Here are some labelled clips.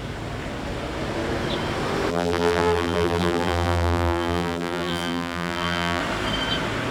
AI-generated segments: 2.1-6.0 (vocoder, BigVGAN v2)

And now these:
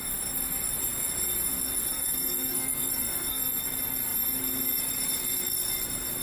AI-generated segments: 1.9-3.5 (codec, SNAC)